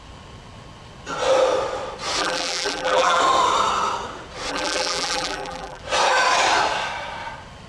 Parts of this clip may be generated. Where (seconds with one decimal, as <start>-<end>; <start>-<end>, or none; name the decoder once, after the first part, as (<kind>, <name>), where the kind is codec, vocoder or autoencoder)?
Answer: 2.2-3.2 (vocoder, BigVGAN v2); 4.5-5.8